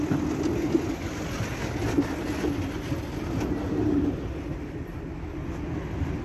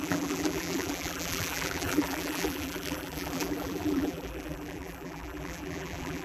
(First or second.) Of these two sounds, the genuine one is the first